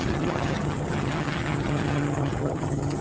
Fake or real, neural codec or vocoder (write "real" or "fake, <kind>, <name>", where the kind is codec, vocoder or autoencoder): fake, vocoder, HiFi-GAN